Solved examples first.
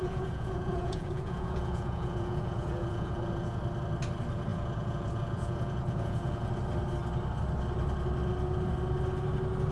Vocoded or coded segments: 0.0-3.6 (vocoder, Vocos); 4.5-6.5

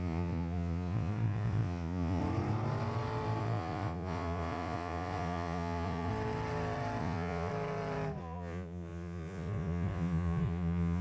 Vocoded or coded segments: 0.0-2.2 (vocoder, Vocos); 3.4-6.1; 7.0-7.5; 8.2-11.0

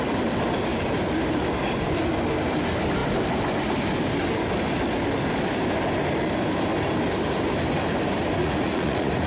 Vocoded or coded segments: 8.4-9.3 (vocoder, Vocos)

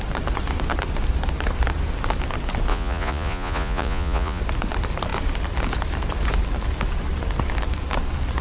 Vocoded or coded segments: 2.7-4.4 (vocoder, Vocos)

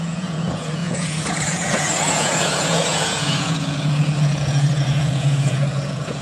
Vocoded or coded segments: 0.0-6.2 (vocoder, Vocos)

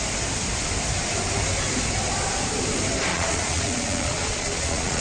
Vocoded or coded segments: 3.1-5.0 (vocoder, Vocos)